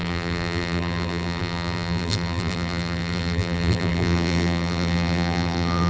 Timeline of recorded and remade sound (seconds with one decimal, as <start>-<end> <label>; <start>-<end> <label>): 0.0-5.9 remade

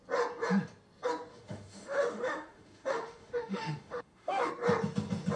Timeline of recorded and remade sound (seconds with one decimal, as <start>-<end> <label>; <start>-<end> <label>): 0.0-1.3 recorded; 1.3-4.5 remade; 4.5-5.4 recorded

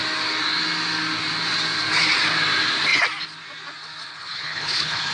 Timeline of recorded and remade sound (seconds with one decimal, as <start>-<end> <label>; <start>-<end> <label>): 0.0-4.1 recorded; 4.1-5.1 remade